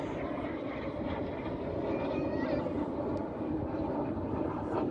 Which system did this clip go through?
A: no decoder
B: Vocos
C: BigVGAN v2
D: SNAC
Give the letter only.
A